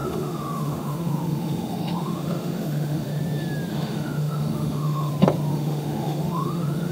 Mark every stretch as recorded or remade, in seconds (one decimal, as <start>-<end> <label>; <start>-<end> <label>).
0.0-3.2 remade; 3.2-3.7 recorded; 3.7-5.1 remade; 5.1-5.5 recorded; 5.5-6.9 remade